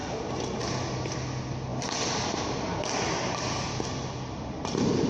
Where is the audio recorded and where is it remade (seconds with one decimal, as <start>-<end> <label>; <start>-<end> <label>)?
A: 0.0-5.1 recorded